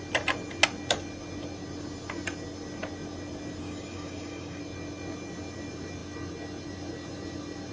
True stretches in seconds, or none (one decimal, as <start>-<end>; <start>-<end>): 0.0-3.6; 4.6-7.7